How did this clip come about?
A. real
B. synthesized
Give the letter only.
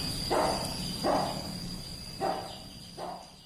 A